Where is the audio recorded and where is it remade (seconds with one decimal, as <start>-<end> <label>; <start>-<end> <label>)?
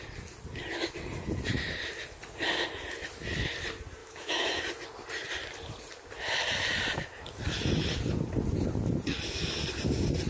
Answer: 0.0-4.0 recorded; 4.0-4.6 remade; 4.6-10.3 recorded